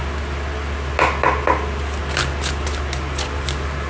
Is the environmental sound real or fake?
real